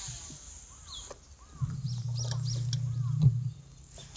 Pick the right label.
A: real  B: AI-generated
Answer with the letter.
A